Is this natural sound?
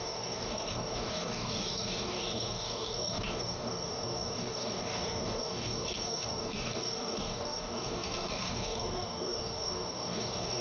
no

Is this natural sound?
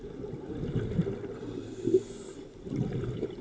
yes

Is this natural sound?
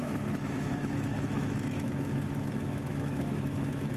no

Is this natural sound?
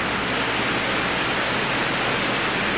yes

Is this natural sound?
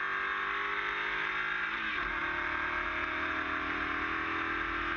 yes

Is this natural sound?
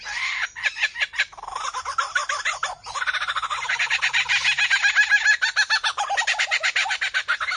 yes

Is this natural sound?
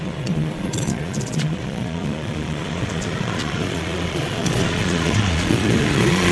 no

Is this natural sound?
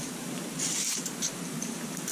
no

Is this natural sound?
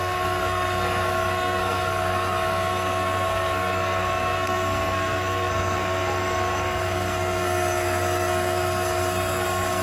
no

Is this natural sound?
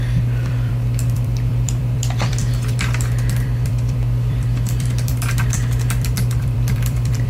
no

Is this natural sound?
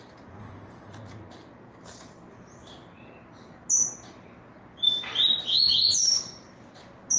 yes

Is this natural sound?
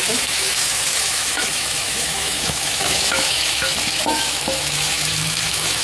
no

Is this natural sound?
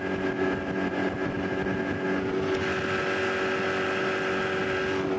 yes